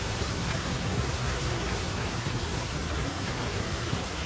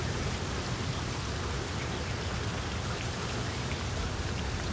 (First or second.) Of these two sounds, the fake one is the first